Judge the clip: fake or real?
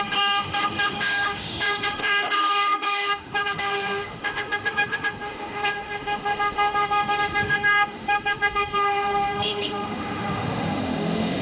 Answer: fake